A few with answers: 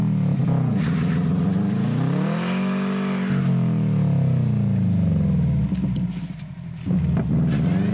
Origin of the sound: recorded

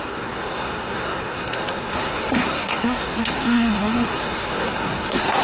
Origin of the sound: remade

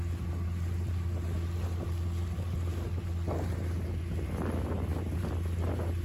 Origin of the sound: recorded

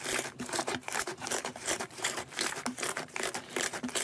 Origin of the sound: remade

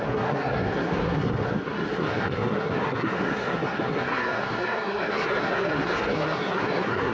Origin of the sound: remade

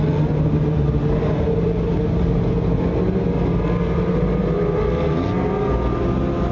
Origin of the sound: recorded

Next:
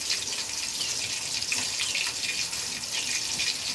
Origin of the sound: recorded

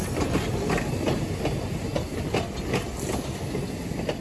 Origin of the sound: recorded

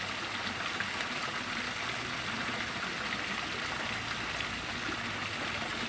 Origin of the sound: recorded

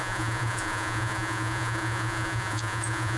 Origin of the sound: remade